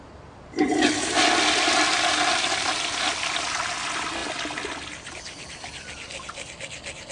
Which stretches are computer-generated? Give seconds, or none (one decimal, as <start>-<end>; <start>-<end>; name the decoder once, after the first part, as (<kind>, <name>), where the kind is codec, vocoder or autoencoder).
none